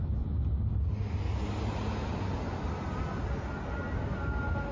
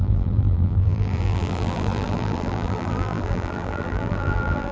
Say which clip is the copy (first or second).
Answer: second